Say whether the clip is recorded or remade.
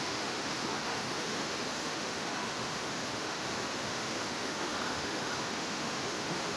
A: remade